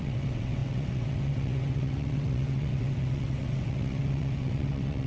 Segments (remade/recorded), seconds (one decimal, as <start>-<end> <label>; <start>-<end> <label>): 0.0-5.1 remade